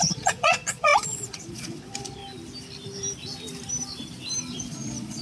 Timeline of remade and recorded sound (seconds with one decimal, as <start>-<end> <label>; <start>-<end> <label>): 0.0-2.2 remade; 2.2-4.5 recorded; 4.5-5.2 remade